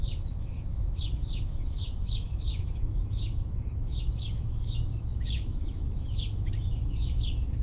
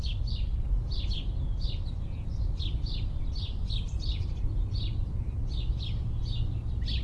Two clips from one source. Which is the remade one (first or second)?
first